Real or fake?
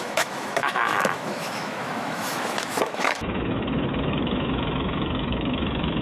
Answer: fake